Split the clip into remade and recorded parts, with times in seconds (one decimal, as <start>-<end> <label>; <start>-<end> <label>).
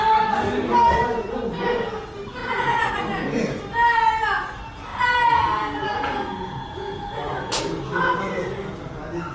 0.0-2.4 recorded; 2.4-2.9 remade; 2.9-4.9 recorded; 4.9-7.6 remade; 7.6-9.3 recorded